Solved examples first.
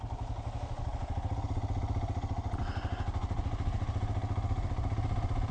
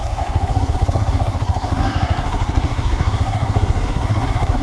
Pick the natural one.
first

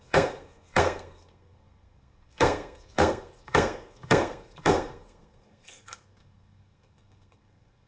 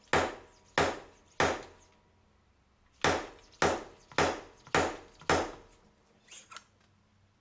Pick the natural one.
second